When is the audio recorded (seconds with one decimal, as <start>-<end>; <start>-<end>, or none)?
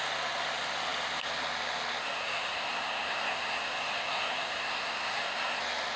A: 0.0-2.0; 5.6-6.0